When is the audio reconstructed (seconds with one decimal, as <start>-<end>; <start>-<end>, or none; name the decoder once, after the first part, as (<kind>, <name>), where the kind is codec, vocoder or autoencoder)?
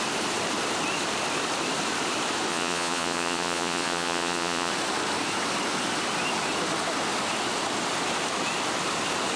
2.5-4.7 (vocoder, Vocos)